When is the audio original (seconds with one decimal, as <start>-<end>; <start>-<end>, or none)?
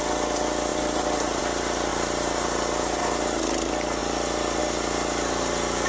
0.0-0.7; 1.4-1.9; 3.0-5.9